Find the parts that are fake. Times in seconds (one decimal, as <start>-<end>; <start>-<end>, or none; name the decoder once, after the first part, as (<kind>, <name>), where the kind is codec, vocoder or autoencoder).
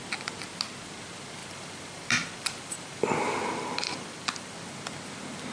1.4-4.7 (vocoder, BigVGAN v2)